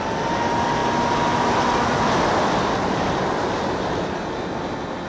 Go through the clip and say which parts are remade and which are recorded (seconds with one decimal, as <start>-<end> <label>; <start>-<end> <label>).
0.0-5.1 recorded

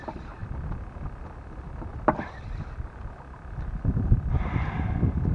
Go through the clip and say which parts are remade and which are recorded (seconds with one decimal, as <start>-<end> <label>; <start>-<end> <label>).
0.0-5.3 recorded

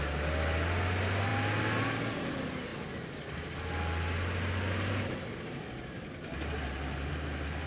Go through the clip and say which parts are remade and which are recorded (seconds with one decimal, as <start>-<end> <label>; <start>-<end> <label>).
0.0-7.7 recorded

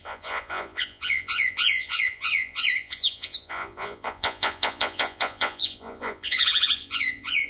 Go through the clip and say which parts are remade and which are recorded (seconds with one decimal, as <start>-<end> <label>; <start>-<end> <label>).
0.0-7.5 remade

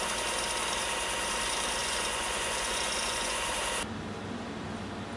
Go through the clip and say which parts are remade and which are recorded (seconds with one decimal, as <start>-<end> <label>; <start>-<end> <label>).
0.0-1.8 recorded; 1.8-3.6 remade; 3.6-5.2 recorded